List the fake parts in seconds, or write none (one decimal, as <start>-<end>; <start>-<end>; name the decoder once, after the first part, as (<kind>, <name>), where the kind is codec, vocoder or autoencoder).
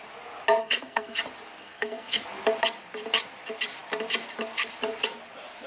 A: 0.6-1.2 (codec, SNAC); 1.6-2.2